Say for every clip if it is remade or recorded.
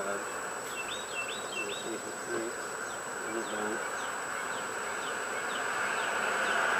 recorded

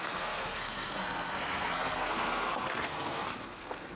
remade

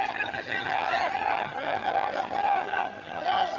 remade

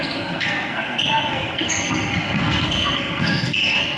remade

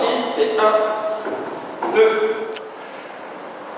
recorded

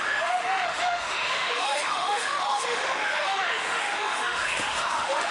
remade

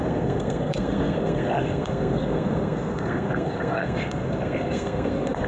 remade